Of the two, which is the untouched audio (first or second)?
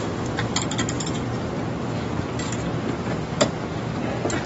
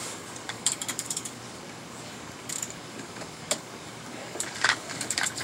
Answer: first